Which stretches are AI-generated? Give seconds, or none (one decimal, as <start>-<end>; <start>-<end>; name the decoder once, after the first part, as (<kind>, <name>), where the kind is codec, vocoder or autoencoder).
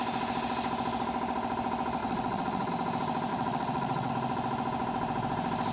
2.0-2.7 (vocoder, WaveNeXt); 3.3-4.1